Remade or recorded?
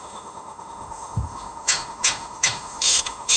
remade